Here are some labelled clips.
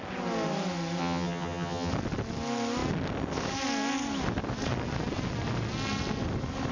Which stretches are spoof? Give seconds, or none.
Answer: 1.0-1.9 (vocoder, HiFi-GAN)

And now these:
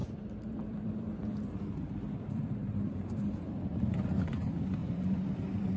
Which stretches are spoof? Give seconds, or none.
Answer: 0.0-1.7 (vocoder, BigVGAN v2); 4.8-5.8